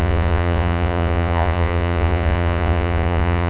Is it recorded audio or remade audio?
remade